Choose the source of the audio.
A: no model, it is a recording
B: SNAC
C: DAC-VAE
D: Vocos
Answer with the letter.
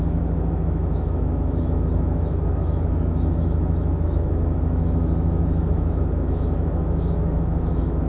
C